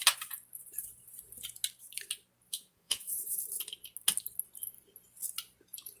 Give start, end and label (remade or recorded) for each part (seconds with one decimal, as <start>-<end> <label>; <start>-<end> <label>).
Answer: 0.0-2.5 recorded; 2.5-3.4 remade; 3.4-6.0 recorded